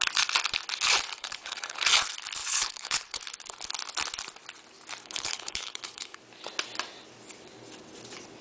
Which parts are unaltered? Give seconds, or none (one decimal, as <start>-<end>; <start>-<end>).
0.0-1.2; 1.9-2.4; 3.2-5.0; 6.2-8.4